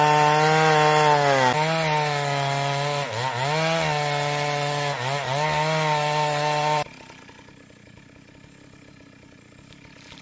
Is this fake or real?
real